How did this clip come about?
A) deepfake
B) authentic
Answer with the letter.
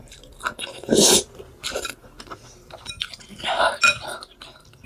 B